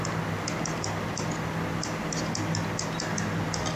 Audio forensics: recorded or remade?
recorded